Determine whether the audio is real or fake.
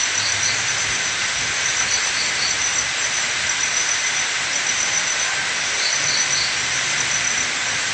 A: real